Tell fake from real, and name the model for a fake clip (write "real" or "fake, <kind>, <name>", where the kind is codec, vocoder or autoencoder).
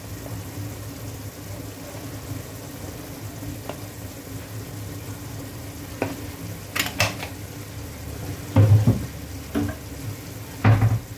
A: real